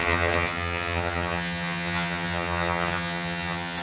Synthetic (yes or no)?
yes